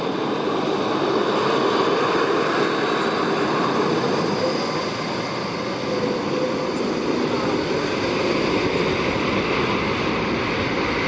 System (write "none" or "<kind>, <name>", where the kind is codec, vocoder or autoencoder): none